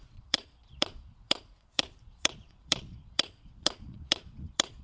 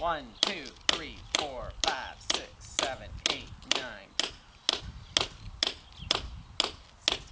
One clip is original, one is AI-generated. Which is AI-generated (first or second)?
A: first